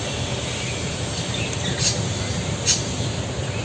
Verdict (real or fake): real